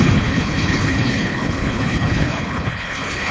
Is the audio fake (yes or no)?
yes